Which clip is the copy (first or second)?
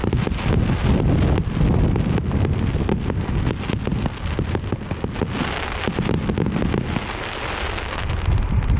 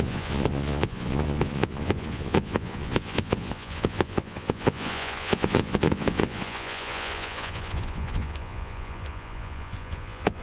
second